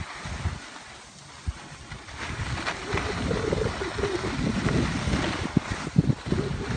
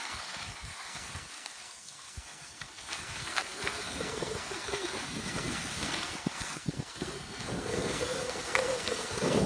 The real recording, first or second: first